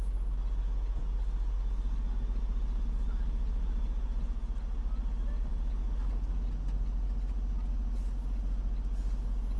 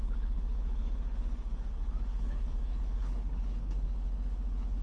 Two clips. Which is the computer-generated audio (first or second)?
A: second